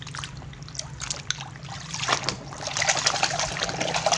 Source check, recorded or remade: recorded